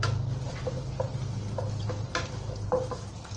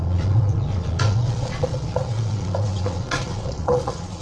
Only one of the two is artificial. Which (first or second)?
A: second